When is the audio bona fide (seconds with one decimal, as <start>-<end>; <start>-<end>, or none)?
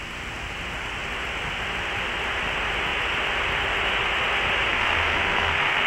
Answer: 0.0-4.7